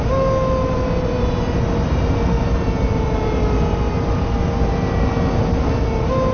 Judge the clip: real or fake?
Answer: real